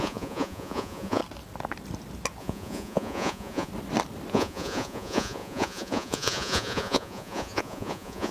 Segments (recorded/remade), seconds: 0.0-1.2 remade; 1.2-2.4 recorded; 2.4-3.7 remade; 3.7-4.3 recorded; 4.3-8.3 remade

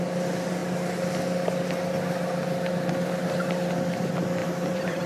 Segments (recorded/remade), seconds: 0.0-4.4 recorded; 4.4-5.1 remade

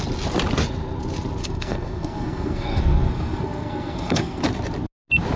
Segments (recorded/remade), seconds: 0.0-1.4 recorded; 1.4-4.4 remade; 4.4-5.4 recorded

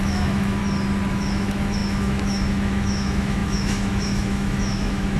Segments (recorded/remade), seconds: 0.0-0.6 remade; 0.6-1.1 recorded; 1.1-5.2 remade

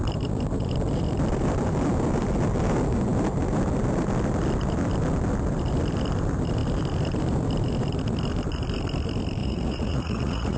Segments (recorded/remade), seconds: 0.0-9.4 recorded; 9.4-10.6 remade

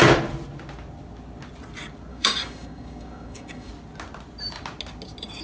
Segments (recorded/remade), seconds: 0.0-2.1 recorded; 2.1-3.7 remade; 3.7-5.4 recorded